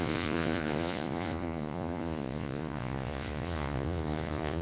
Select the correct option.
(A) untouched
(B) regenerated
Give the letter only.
B